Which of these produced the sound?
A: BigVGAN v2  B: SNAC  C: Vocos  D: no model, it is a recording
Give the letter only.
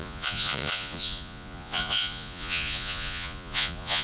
C